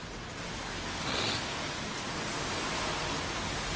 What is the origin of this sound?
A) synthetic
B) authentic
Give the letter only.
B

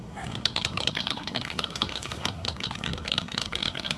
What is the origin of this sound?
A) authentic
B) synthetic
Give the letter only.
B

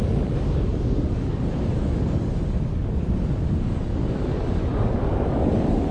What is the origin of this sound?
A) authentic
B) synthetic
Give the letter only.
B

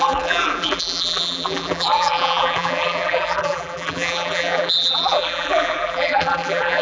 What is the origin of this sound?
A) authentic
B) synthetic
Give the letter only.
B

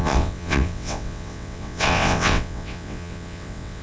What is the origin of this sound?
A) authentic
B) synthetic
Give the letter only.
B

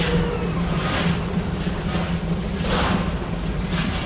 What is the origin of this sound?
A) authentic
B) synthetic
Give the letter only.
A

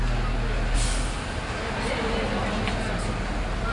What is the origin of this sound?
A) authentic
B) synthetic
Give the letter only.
A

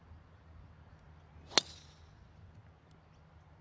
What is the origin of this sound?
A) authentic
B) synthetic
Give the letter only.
A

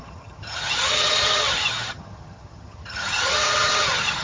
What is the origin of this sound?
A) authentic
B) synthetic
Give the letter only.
B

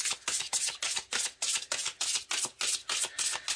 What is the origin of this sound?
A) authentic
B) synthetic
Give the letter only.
A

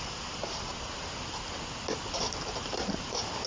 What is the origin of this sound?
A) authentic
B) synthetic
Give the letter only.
A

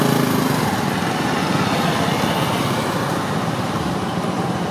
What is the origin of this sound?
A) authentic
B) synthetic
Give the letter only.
A